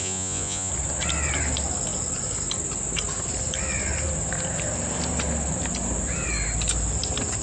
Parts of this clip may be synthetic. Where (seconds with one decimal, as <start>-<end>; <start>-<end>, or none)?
0.0-0.7